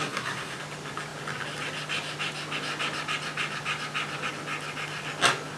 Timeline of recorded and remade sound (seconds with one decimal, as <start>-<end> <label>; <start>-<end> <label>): 0.0-0.6 remade; 0.6-5.6 recorded